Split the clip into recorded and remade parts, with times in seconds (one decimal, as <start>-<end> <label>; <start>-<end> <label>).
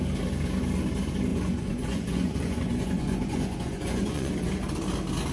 0.0-1.3 recorded; 1.3-4.5 remade; 4.5-5.3 recorded